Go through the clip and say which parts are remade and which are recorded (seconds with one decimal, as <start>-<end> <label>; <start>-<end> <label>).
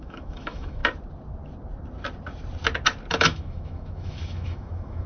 0.0-0.8 remade; 0.8-3.1 recorded; 3.1-5.1 remade